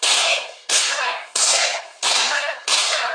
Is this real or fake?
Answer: fake